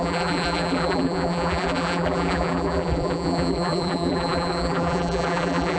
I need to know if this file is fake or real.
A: fake